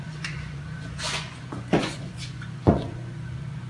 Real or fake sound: fake